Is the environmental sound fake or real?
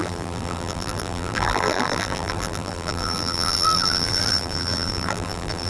fake